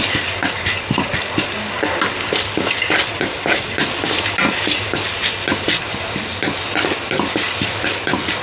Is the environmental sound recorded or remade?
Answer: recorded